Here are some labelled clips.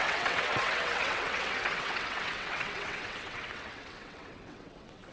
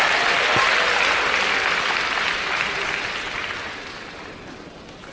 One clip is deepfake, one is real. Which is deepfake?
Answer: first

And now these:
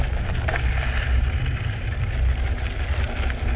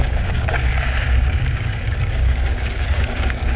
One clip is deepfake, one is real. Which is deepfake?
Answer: second